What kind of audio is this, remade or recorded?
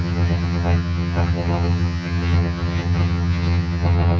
remade